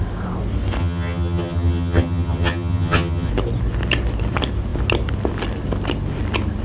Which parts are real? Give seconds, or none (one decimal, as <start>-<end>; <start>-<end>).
0.0-0.8; 3.3-6.6